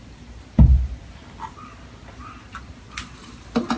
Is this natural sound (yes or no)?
yes